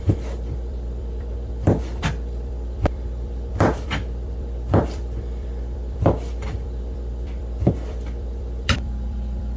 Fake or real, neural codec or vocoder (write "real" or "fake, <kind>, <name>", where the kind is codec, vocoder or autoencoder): fake, vocoder, BigVGAN v2